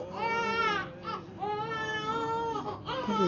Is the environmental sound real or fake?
real